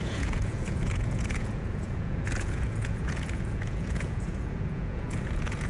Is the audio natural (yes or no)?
no